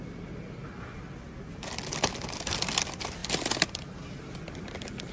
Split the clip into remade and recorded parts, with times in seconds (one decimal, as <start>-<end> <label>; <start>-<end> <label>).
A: 0.0-3.2 recorded; 3.2-4.6 remade; 4.6-5.1 recorded